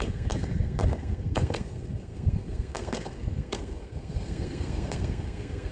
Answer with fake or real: fake